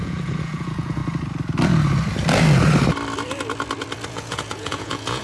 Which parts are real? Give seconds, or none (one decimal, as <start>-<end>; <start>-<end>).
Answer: 1.0-4.1